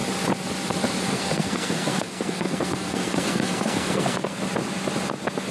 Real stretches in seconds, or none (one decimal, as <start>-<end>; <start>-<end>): 0.0-1.1; 4.4-5.5